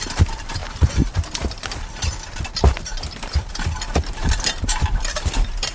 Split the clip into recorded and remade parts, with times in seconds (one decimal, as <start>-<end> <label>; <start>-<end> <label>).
0.0-5.7 remade